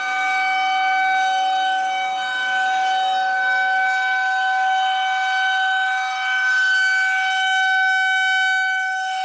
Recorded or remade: remade